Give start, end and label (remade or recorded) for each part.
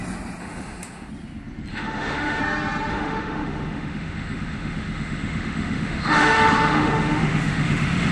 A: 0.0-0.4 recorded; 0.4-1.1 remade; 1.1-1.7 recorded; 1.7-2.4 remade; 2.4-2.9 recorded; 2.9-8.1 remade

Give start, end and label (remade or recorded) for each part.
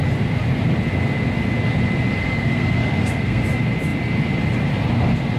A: 0.0-2.2 recorded; 2.2-3.4 remade; 3.4-5.4 recorded